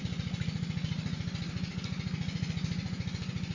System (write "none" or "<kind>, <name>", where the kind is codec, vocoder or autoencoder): vocoder, BigVGAN v2